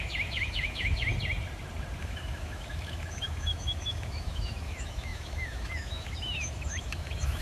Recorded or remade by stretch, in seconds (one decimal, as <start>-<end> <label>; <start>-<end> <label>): 0.0-1.1 remade; 1.1-2.0 recorded; 2.0-7.4 remade